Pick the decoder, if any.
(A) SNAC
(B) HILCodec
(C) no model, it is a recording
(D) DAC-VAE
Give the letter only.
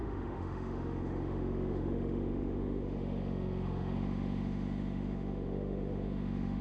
D